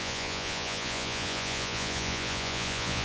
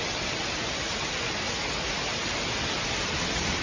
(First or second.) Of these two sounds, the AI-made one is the first